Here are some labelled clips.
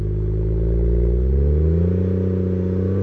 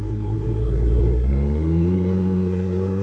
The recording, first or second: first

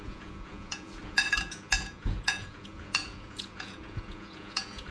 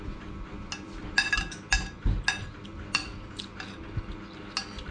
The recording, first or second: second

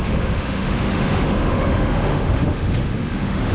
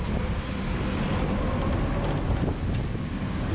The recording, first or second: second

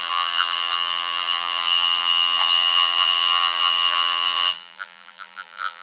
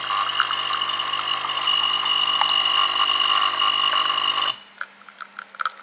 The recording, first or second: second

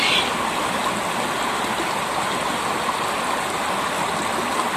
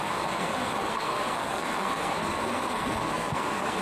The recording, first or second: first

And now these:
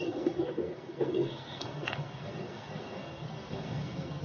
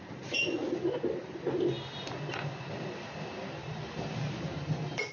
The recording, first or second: second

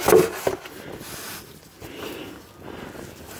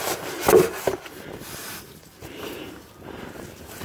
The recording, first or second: first